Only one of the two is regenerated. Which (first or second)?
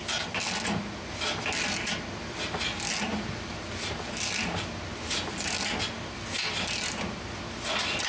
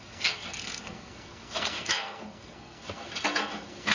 second